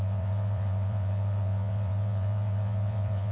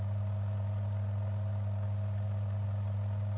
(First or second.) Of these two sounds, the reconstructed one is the first